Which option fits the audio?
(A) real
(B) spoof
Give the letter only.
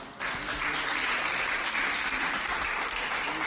A